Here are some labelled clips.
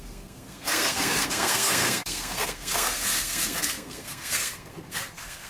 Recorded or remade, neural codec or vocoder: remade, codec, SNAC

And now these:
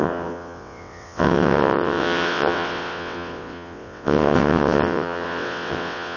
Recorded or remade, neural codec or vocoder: remade, vocoder, WaveNeXt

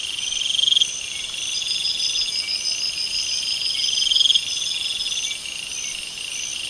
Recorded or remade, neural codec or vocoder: recorded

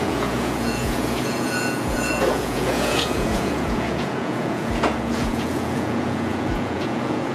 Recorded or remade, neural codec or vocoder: remade, vocoder, Vocos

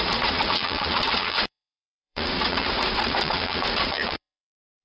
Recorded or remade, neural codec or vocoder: remade, vocoder, Vocos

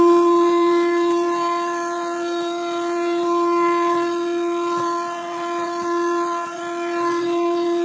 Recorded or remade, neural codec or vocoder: remade, vocoder, Vocos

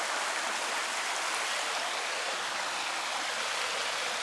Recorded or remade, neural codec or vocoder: recorded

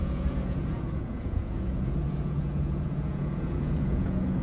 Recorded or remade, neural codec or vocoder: remade, vocoder, Vocos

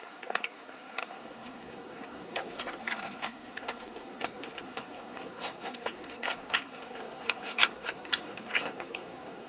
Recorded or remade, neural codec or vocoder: remade, codec, SNAC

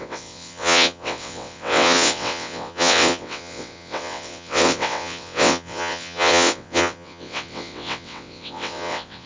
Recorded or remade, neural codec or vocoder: remade, vocoder, WaveNeXt